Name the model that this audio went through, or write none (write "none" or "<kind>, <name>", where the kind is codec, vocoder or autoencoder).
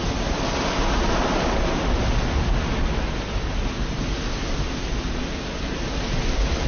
none